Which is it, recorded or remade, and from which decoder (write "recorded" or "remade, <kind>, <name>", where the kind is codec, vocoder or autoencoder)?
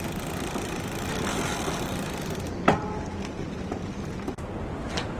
recorded